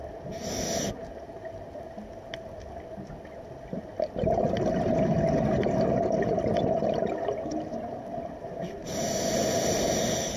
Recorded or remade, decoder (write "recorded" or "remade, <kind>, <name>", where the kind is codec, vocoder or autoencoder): recorded